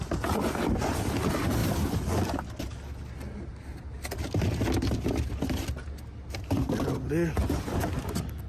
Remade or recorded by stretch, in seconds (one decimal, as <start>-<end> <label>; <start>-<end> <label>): 0.0-8.5 recorded